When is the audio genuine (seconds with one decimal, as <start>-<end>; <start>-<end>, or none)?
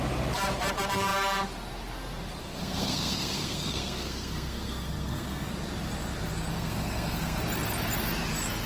0.0-2.4; 5.5-6.5; 7.4-8.7